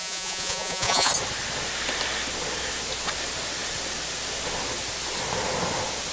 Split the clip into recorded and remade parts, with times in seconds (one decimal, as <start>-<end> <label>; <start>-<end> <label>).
0.0-1.1 remade; 1.1-6.1 recorded